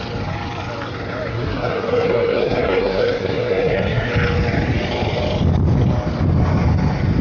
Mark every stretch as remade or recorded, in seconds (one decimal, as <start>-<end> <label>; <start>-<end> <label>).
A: 0.0-1.3 recorded; 1.3-4.1 remade; 4.1-7.2 recorded